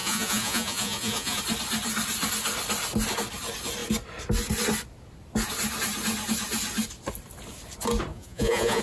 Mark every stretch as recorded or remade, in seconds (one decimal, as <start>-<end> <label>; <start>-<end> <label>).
0.0-1.4 remade; 1.4-8.1 recorded; 8.1-8.8 remade